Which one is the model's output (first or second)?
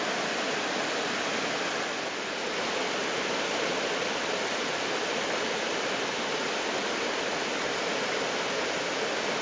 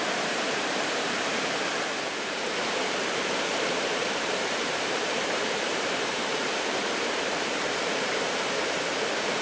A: second